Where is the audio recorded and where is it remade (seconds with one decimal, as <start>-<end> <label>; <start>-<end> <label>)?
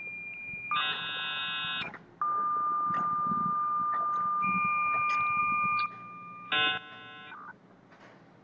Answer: 0.0-8.4 recorded